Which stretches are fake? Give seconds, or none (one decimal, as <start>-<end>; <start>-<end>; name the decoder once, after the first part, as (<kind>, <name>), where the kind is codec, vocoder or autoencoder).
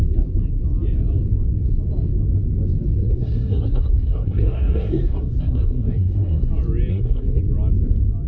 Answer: 3.0-6.5 (codec, SNAC); 6.9-7.4